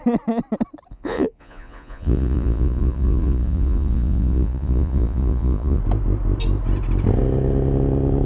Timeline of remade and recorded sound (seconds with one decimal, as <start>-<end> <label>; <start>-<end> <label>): 0.0-0.9 recorded; 0.9-5.8 remade; 5.8-8.2 recorded